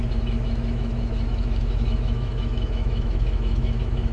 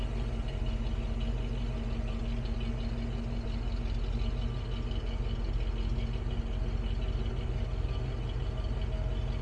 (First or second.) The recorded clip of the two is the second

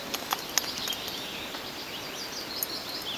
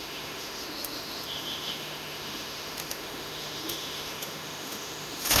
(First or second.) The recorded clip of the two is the first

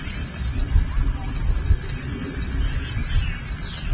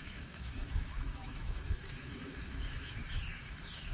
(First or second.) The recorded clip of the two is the first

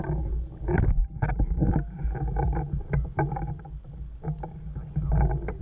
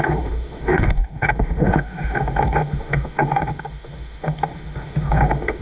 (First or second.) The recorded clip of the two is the first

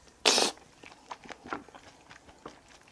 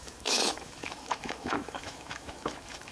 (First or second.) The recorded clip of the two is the first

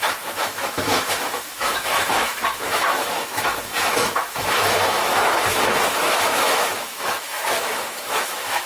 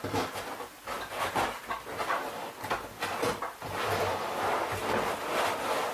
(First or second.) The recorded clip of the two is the second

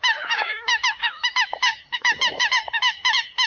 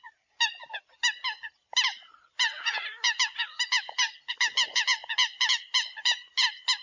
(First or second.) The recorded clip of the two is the second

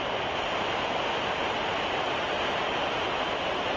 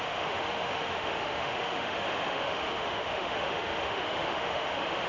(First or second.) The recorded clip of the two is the first